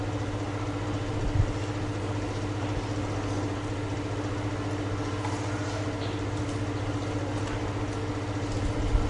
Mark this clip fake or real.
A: real